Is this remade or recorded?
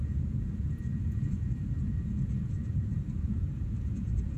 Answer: remade